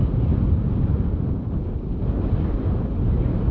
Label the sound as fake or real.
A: real